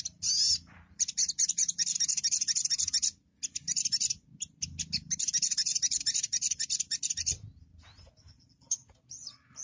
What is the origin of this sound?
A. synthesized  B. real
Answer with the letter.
B